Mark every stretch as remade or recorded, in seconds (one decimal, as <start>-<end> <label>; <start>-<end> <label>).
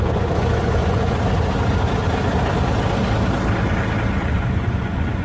0.0-1.2 remade; 1.2-4.3 recorded; 4.3-5.2 remade